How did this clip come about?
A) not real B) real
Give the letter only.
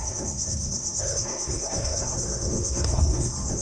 A